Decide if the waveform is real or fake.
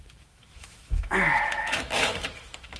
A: fake